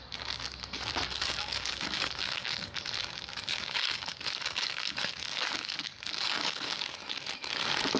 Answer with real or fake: fake